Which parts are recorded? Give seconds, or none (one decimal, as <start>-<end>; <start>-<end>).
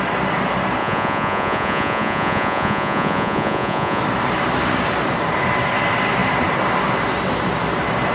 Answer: 0.0-0.8; 4.0-8.1